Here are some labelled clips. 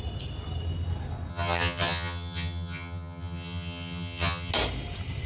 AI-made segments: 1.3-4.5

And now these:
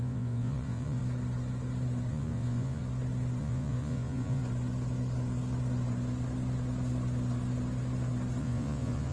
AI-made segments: 0.0-1.0; 2.1-2.8; 3.4-4.4; 8.4-9.1